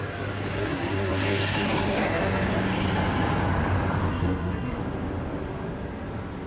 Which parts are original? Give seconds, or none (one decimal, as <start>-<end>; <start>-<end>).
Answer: 0.0-0.5; 2.2-4.1; 4.8-6.5